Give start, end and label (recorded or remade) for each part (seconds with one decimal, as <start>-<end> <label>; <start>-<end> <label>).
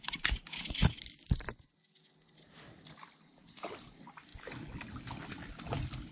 0.0-6.1 recorded